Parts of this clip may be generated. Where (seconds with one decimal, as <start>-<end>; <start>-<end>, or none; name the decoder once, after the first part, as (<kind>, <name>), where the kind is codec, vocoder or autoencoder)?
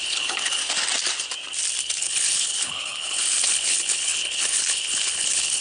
0.0-0.6 (codec, HILCodec); 1.8-5.6